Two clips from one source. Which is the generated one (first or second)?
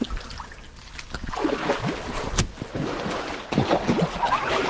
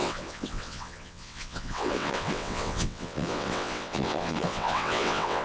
second